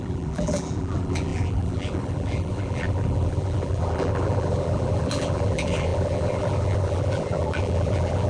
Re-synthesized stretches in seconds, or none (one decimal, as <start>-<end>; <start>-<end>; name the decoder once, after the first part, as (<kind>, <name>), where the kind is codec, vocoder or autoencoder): 0.0-8.3 (vocoder, BigVGAN v2)